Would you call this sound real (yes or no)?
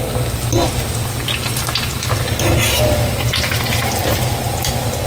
yes